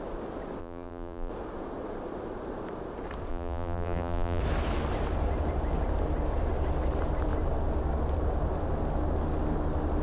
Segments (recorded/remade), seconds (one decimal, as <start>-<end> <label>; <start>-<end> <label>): 0.0-0.6 recorded; 0.6-1.3 remade; 1.3-3.3 recorded; 3.3-4.4 remade; 4.4-10.0 recorded